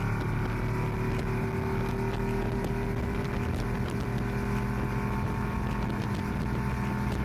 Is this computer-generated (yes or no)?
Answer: no